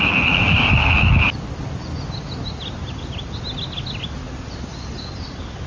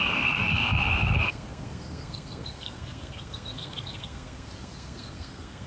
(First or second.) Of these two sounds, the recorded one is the first